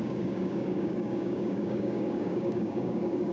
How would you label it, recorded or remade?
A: remade